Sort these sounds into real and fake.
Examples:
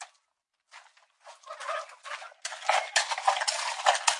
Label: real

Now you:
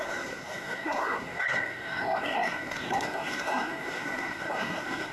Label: fake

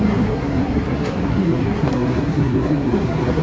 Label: fake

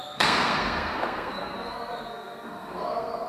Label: fake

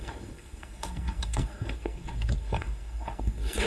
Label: fake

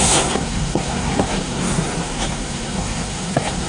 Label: fake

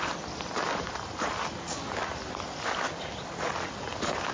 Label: real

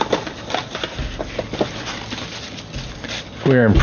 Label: real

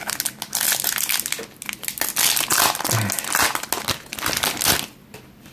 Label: real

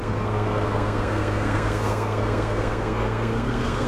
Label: fake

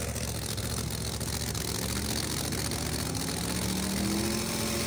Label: real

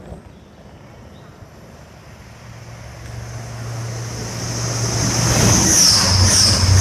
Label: real